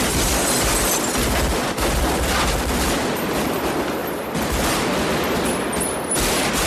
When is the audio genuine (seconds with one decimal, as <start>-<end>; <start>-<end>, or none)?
0.0-6.7

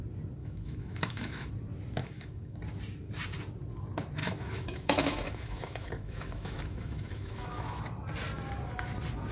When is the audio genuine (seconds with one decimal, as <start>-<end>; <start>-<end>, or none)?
0.0-0.4; 1.5-2.0; 2.6-4.2; 7.8-9.3

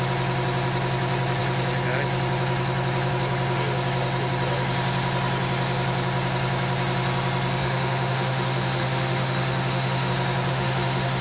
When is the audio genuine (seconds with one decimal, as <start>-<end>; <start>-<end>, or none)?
0.0-7.6; 10.1-10.5

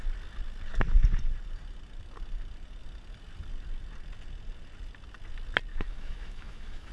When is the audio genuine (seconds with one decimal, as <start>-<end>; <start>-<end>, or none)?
0.0-5.7

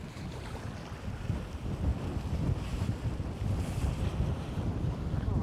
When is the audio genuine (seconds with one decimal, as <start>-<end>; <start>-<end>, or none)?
0.0-5.4

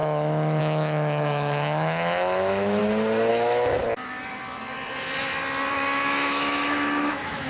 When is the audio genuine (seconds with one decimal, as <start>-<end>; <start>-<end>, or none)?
2.8-3.3; 3.8-5.7

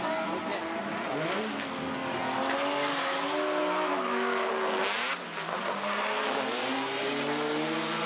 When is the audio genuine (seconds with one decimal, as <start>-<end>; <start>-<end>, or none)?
0.0-3.6; 4.5-8.1

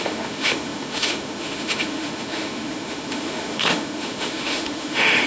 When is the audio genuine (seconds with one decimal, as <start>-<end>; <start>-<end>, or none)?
none